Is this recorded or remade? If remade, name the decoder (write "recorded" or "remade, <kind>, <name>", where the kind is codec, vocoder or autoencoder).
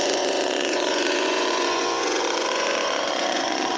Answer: remade, vocoder, Vocos